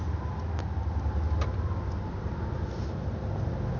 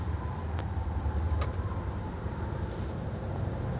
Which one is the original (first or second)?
first